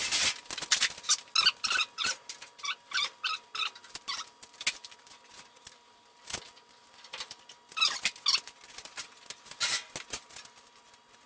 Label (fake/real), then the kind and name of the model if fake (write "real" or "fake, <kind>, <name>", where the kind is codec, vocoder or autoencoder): real